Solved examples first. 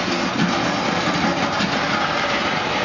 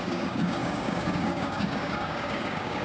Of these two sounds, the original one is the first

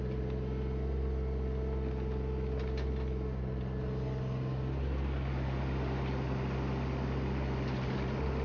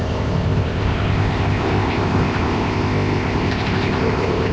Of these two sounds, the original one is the first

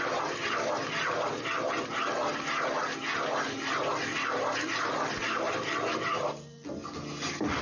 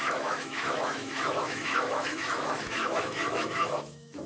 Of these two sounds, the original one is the first